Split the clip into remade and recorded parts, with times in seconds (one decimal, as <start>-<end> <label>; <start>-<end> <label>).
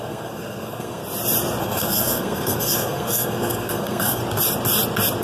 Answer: 0.0-1.0 remade; 1.0-1.6 recorded; 1.6-4.2 remade; 4.2-5.2 recorded